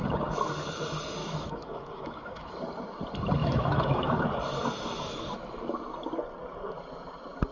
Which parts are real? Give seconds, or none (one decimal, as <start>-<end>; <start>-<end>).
0.0-1.2; 2.6-3.4; 4.2-5.0; 5.6-7.5